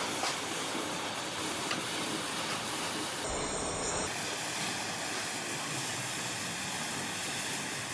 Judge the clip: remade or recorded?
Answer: recorded